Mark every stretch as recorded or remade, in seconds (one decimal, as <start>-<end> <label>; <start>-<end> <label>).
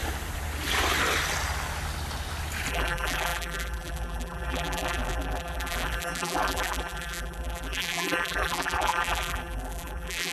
0.0-2.7 recorded; 2.7-10.3 remade